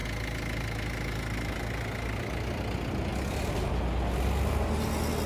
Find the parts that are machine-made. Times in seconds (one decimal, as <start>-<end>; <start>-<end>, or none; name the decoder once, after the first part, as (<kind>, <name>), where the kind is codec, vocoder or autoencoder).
none

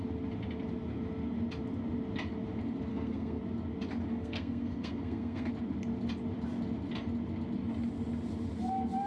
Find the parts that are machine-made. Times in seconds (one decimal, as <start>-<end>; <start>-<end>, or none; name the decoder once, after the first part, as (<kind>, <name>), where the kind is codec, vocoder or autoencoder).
2.9-3.4 (codec, SNAC); 4.1-5.5